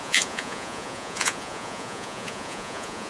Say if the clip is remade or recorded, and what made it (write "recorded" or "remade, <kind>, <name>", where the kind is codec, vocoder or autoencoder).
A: remade, vocoder, Vocos